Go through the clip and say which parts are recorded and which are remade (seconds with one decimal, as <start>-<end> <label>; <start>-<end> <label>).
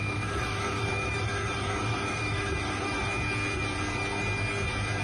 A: 0.0-3.0 remade; 3.0-5.0 recorded